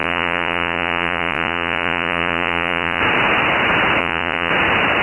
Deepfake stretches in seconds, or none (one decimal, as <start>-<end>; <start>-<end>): 0.0-3.0; 4.0-4.5